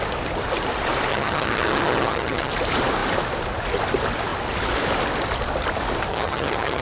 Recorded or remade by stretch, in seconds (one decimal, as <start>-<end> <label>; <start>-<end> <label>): 0.0-1.1 recorded; 1.1-2.5 remade; 2.5-6.1 recorded; 6.1-6.8 remade